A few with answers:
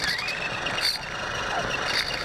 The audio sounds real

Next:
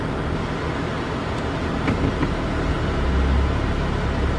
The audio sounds real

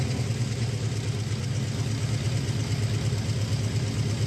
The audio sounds real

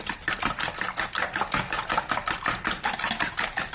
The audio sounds real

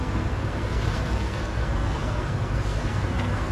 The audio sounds fake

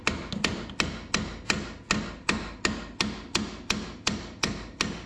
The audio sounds real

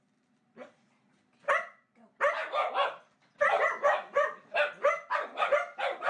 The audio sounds real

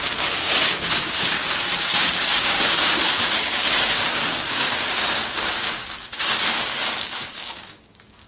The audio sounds fake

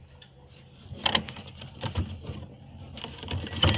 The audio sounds real